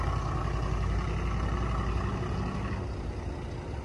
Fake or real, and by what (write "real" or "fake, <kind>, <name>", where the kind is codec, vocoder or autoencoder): real